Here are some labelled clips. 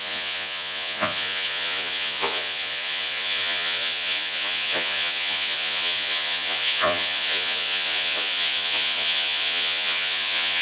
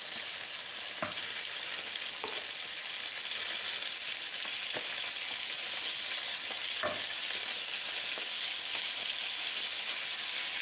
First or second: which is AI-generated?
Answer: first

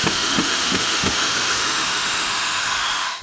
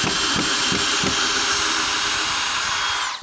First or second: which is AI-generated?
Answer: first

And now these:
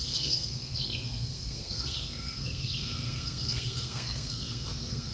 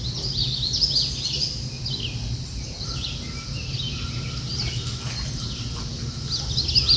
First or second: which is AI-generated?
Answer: first